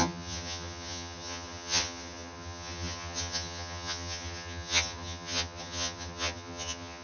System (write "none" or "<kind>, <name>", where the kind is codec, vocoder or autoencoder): vocoder, HiFi-GAN